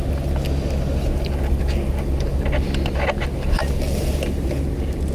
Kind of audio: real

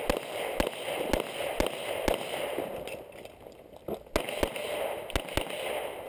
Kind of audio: real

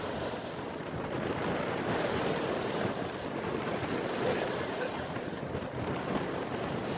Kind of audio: fake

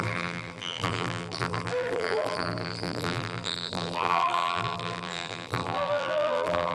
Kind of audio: fake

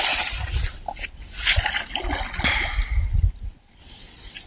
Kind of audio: real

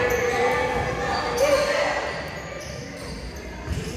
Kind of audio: real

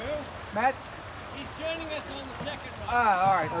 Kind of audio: real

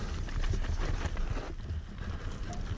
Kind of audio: real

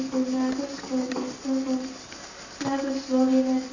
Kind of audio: real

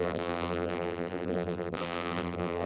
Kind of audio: fake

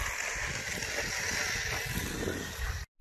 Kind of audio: real